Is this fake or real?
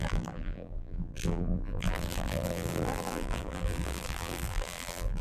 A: fake